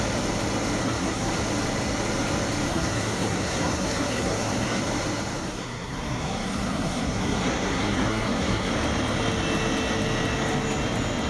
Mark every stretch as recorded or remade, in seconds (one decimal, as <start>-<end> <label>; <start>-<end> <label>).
0.0-0.8 recorded; 0.8-1.3 remade; 1.3-2.7 recorded; 2.7-4.8 remade; 4.8-5.4 recorded; 5.4-8.7 remade; 8.7-11.3 recorded